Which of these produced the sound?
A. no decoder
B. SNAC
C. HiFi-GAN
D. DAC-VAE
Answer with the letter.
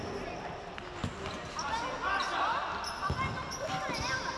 A